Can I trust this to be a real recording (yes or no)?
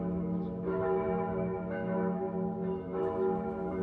no